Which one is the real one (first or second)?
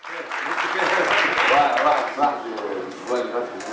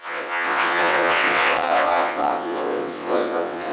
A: first